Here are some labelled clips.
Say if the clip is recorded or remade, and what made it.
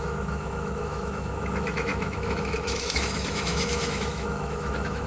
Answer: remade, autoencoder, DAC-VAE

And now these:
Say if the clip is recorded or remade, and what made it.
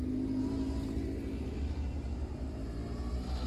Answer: recorded